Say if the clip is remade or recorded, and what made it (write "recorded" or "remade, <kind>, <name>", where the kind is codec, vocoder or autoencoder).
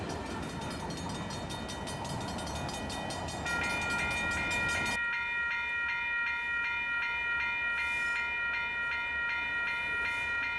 recorded